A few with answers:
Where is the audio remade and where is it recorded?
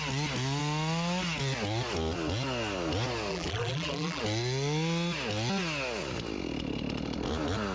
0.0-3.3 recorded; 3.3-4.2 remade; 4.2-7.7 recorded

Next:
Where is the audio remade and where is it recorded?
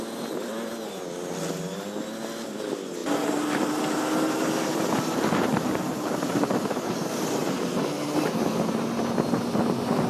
0.0-5.5 recorded; 5.5-7.4 remade; 7.4-10.1 recorded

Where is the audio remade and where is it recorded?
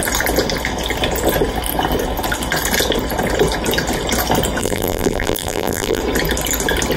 0.0-4.6 recorded; 4.6-6.0 remade; 6.0-7.0 recorded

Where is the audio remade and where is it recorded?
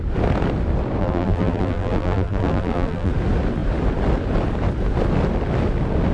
0.0-1.0 recorded; 1.0-3.1 remade; 3.1-6.1 recorded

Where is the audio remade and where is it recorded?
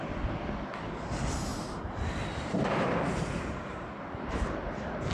0.0-1.5 recorded; 1.5-4.6 remade; 4.6-5.1 recorded